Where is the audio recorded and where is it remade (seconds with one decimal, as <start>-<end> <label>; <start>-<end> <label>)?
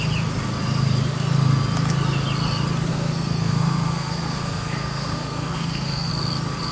0.0-2.9 recorded; 2.9-6.1 remade; 6.1-6.7 recorded